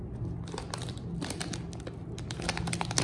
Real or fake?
real